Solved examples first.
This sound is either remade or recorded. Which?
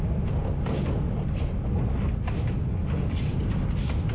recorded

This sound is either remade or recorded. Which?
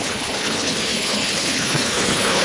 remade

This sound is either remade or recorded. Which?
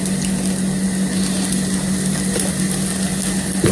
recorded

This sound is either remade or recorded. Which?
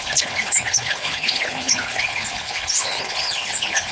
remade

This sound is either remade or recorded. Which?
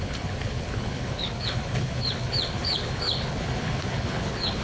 remade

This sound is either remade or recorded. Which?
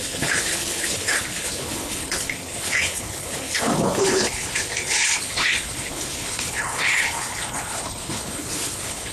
remade